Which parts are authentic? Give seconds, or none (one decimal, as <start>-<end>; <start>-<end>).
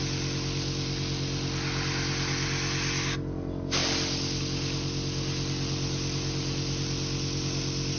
0.0-8.0